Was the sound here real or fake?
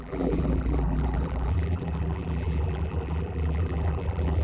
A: fake